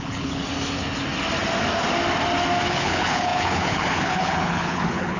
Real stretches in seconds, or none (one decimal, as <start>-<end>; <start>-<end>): 0.4-2.7